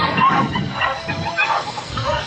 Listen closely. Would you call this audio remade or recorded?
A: remade